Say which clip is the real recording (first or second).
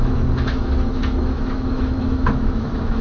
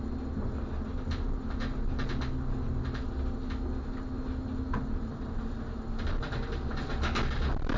second